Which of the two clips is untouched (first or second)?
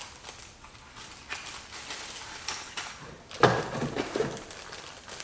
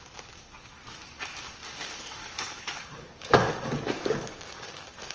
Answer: first